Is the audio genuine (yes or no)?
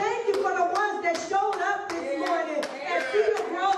yes